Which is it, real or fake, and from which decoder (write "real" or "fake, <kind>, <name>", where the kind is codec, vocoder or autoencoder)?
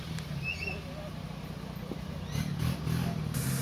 real